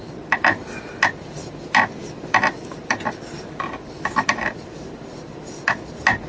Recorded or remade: recorded